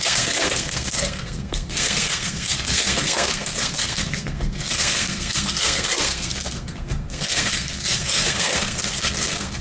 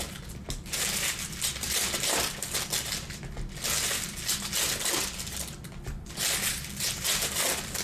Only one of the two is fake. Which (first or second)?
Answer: first